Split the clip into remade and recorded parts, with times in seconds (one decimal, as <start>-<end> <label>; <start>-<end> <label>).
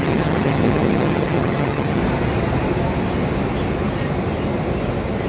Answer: 0.0-2.0 remade; 2.0-5.3 recorded